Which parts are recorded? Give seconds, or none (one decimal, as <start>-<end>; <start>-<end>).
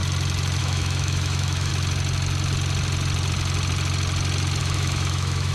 0.0-0.6; 1.7-4.6